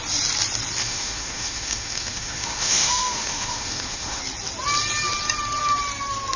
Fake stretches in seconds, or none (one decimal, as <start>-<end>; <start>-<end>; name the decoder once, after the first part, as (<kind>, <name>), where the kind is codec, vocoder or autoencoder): 0.8-4.2 (autoencoder, DAC-VAE)